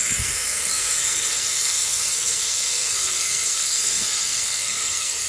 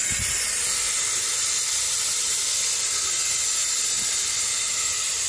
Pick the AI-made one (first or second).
first